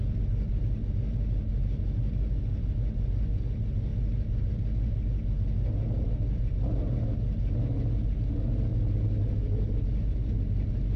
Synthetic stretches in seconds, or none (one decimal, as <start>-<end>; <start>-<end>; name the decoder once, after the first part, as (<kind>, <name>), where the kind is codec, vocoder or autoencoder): none